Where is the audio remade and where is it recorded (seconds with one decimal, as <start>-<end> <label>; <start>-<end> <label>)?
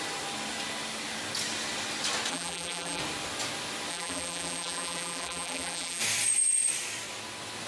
0.0-2.3 recorded; 2.3-3.0 remade; 3.0-3.9 recorded; 3.9-6.0 remade; 6.0-7.7 recorded